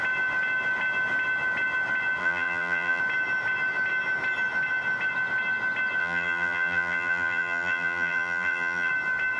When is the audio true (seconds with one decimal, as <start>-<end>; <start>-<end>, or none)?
0.0-2.2; 3.0-6.0; 8.9-9.4

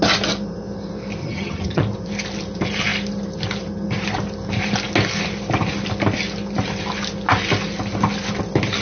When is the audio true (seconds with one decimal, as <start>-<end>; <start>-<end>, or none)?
0.0-1.2; 1.8-8.8

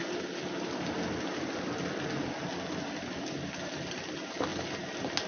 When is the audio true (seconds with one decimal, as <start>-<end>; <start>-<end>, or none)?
0.0-5.3

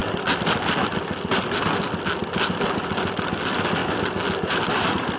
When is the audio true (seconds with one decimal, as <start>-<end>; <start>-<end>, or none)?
0.0-1.3; 2.2-3.4; 3.8-4.5

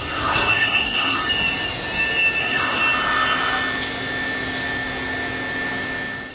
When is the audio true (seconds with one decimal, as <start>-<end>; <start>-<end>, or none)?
1.2-2.4; 2.8-6.3

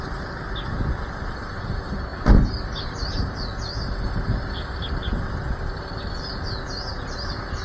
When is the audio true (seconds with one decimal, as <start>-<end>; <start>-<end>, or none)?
0.0-2.1; 6.1-7.6